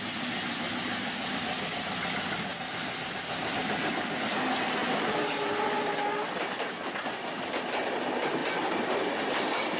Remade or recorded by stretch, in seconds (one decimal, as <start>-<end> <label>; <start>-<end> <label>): 0.0-4.8 recorded; 4.8-5.9 remade; 5.9-8.4 recorded; 8.4-9.0 remade; 9.0-9.8 recorded